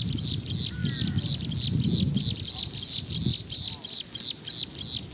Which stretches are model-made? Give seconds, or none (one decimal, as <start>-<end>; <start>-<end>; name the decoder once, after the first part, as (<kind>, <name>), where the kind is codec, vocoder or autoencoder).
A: 3.3-4.1 (vocoder, BigVGAN v2)